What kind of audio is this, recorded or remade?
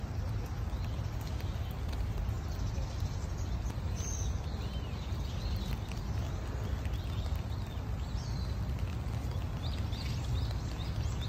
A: recorded